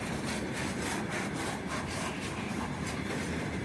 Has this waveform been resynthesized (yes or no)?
yes